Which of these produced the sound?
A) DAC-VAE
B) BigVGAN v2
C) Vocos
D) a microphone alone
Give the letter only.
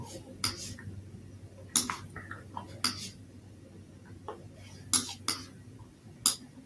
D